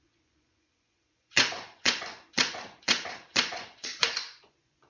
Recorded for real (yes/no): no